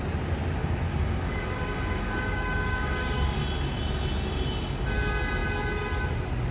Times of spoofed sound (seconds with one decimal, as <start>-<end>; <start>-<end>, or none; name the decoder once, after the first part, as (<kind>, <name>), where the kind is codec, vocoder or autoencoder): 0.6-3.4 (codec, DAC)